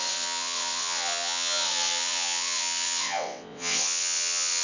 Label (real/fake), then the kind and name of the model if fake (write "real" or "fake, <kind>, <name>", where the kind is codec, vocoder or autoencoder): fake, vocoder, WaveNeXt